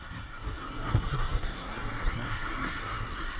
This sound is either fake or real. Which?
fake